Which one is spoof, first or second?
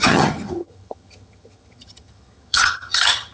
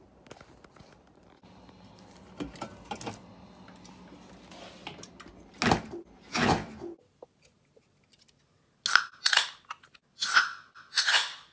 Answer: first